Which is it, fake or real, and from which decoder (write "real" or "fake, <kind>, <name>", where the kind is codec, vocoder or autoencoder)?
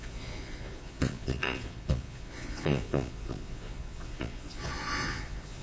fake, vocoder, Vocos